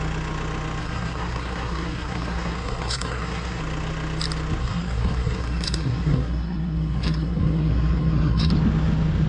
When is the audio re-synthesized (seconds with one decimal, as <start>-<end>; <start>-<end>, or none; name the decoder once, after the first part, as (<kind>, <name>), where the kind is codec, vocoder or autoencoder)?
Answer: 0.8-3.6 (codec, SNAC); 4.6-8.5